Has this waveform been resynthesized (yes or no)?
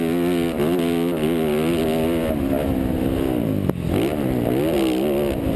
no